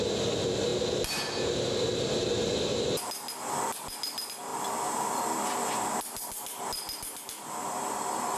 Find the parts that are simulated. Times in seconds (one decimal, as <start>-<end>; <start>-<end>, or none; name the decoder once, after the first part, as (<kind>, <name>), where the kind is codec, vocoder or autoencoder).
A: none